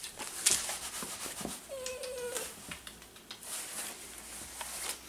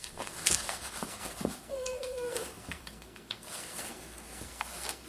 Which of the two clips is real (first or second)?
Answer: first